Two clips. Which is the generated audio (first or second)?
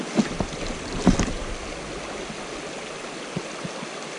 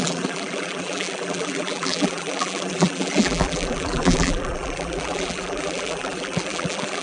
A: second